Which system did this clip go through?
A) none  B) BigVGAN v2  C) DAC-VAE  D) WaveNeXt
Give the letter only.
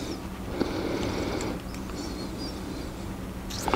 A